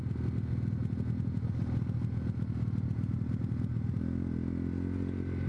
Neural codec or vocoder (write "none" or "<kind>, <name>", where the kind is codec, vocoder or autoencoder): none